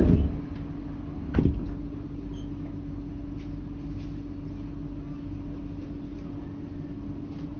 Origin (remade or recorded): recorded